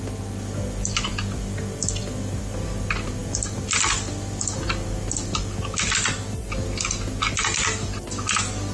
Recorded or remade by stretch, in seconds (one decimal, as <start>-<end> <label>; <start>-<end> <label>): 0.0-8.7 recorded